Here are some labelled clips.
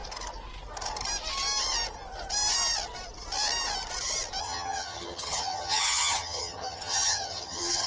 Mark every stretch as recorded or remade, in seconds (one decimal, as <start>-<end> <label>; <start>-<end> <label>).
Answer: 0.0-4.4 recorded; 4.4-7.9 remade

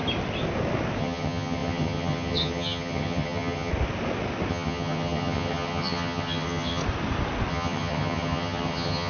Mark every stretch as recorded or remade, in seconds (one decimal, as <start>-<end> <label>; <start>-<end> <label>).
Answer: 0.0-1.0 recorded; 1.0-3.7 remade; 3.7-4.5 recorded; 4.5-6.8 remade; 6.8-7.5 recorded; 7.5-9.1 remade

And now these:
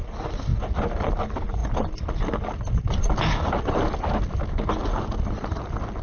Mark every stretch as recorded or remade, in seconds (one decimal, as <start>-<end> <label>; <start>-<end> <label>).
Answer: 0.0-6.0 recorded

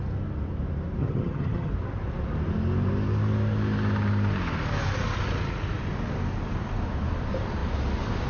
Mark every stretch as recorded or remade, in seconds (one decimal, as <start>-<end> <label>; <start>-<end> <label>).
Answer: 0.0-1.0 recorded; 1.0-1.7 remade; 1.7-8.3 recorded